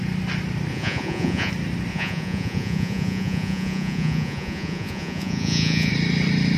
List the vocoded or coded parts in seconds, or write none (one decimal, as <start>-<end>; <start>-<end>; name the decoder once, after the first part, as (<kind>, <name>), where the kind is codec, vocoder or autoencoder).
0.7-1.5 (vocoder, Vocos); 1.9-5.9